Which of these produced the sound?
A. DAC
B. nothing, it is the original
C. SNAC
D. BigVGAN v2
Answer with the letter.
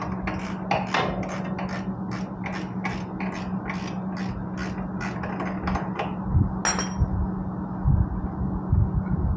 B